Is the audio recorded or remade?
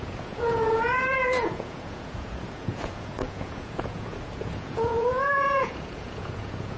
remade